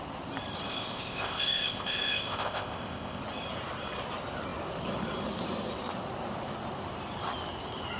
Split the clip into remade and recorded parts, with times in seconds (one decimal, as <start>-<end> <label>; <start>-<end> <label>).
0.0-0.7 recorded; 0.7-3.2 remade; 3.2-8.0 recorded